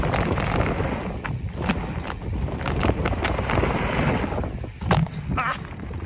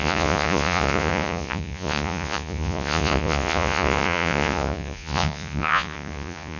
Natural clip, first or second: first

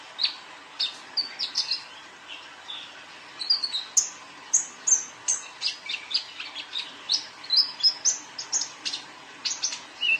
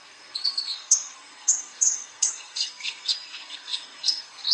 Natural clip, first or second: first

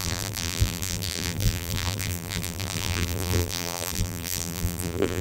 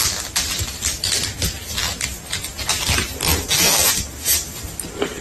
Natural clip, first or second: second